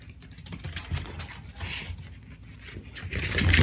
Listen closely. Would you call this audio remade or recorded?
recorded